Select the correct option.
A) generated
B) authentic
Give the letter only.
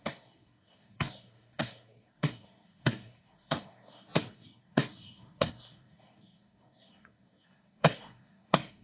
A